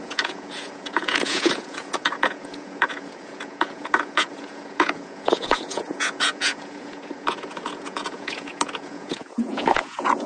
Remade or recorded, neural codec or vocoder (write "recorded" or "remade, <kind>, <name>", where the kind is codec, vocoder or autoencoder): remade, vocoder, Vocos